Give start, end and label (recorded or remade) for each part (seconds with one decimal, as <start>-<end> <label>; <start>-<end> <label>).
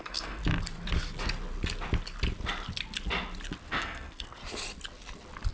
0.0-0.4 remade; 0.4-3.7 recorded; 3.7-4.4 remade; 4.4-5.5 recorded